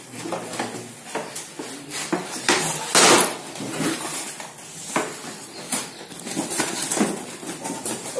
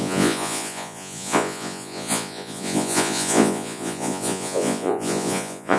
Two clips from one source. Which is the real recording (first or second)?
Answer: first